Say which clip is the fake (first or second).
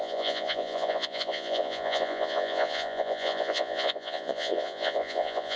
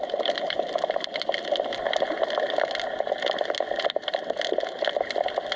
first